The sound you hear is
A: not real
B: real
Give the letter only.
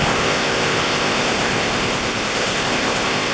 A